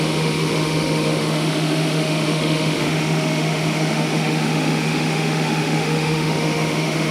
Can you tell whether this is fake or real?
fake